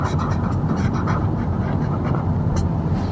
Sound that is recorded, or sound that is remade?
remade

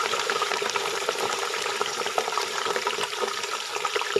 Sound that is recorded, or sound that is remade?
remade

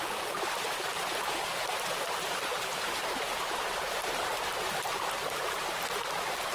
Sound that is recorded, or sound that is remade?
remade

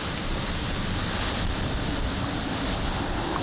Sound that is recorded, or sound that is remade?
recorded